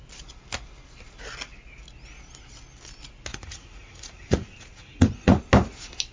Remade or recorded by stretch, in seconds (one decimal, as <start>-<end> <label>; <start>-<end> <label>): 0.0-3.3 recorded; 3.3-5.4 remade; 5.4-6.1 recorded